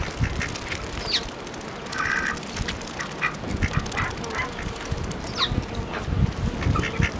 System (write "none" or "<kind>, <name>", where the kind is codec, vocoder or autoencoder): none